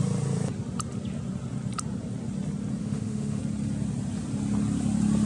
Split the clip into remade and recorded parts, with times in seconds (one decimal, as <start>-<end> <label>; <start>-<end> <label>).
0.0-2.8 recorded; 2.8-3.4 remade; 3.4-5.3 recorded